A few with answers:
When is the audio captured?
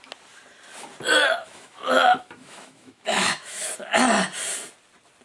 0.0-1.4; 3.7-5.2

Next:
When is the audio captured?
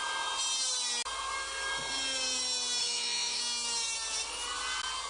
0.0-2.8; 3.4-5.1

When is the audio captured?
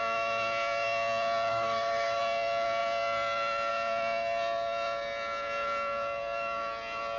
0.0-1.5; 2.2-7.2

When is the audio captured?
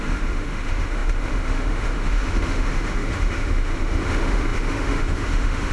none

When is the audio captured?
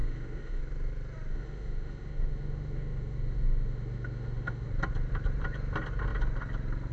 0.6-1.3; 4.7-6.9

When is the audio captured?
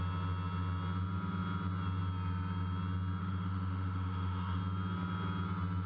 0.0-3.2; 4.6-5.9